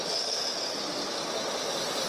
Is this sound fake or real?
real